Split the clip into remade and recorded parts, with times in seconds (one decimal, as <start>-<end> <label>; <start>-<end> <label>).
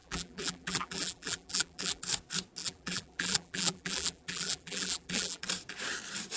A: 0.0-2.0 remade; 2.0-2.6 recorded; 2.6-5.4 remade; 5.4-6.4 recorded